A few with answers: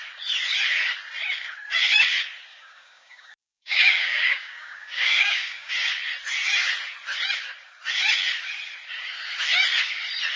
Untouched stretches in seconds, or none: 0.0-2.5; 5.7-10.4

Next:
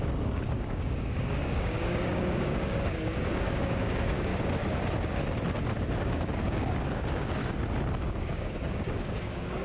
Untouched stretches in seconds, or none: 4.3-6.0; 7.4-8.0

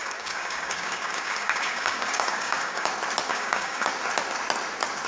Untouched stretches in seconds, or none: 2.9-3.3; 3.9-5.1

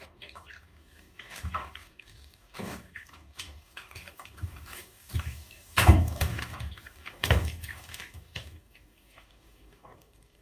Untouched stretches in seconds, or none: none

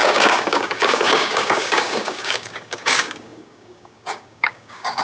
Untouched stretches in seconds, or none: none

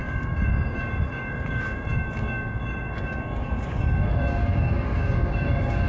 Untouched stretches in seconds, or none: none

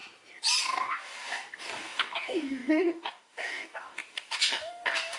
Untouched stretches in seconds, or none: 0.0-0.6

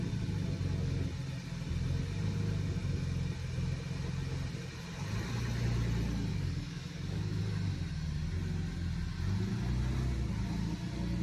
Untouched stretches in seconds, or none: 0.0-6.3; 7.4-11.2